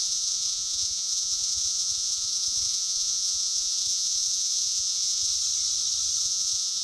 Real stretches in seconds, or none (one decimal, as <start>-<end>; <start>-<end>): 5.3-6.2